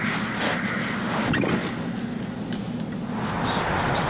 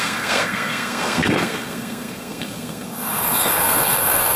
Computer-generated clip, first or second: second